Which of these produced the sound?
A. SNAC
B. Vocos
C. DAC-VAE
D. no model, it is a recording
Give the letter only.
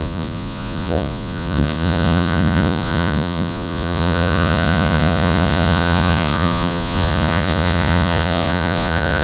B